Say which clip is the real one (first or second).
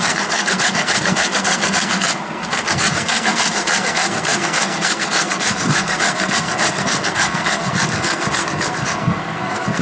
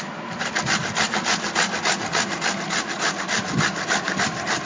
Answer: second